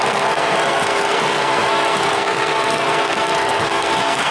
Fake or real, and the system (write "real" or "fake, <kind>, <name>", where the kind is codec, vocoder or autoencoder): fake, codec, SNAC